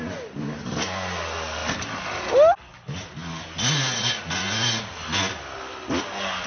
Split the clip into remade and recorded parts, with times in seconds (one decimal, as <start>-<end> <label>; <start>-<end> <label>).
0.0-6.5 recorded